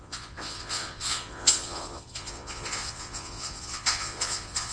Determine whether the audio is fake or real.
fake